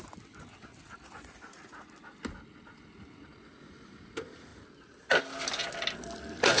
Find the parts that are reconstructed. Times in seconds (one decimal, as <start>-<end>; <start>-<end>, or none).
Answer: none